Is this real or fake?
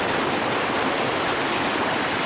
real